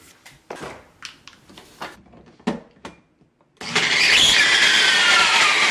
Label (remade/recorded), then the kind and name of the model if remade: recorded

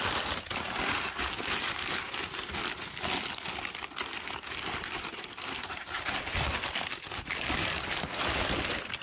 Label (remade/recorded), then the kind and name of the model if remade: recorded